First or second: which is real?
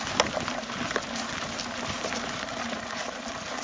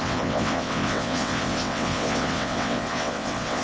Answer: first